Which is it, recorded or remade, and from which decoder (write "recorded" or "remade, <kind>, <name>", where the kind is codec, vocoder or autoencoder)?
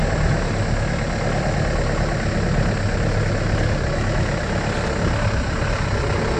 recorded